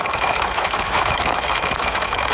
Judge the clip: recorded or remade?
remade